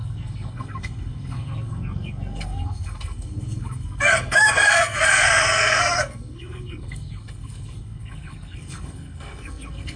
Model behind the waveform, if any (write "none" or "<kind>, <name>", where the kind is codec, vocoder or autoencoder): codec, SNAC